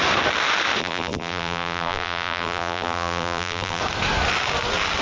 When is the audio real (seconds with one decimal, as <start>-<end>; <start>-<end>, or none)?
0.0-0.8; 3.8-5.0